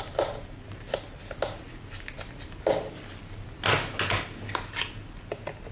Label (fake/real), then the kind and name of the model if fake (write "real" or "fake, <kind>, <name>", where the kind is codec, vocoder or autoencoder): real